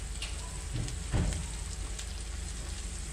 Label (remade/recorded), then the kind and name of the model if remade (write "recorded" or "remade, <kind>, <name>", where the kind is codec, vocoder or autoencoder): recorded